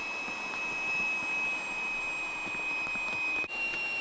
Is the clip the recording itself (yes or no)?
yes